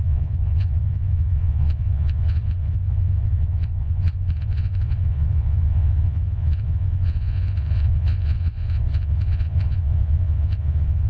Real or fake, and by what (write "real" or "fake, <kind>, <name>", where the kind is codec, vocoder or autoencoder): fake, vocoder, Vocos